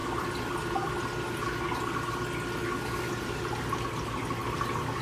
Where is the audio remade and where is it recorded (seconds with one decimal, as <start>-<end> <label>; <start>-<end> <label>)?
0.0-0.9 remade; 0.9-5.0 recorded